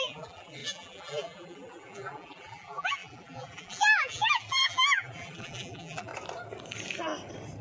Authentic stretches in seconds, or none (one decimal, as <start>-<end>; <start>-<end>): 6.1-7.6